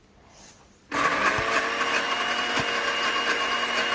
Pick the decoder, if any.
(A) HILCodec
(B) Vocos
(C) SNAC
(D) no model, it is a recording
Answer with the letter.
D